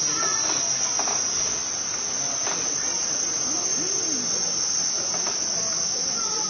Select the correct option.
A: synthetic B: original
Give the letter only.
B